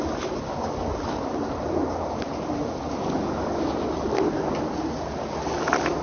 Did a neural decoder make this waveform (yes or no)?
no